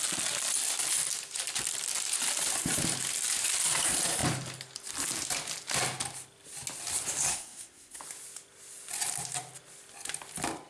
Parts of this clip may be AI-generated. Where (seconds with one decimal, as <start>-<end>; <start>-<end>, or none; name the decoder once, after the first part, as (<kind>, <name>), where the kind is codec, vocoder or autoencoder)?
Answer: 7.3-8.0 (codec, SNAC)